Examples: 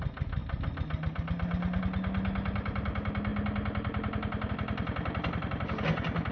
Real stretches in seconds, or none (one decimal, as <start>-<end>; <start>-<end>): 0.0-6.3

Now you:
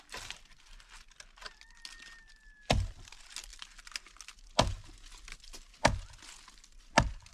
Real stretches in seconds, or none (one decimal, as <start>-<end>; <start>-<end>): 0.0-7.3

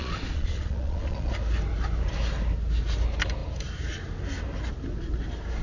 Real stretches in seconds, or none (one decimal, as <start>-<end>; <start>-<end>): 1.3-5.6

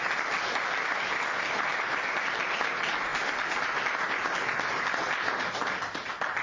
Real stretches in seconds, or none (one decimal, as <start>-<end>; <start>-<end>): 0.0-6.4

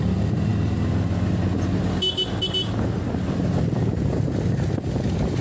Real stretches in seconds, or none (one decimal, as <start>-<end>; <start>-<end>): 0.0-5.4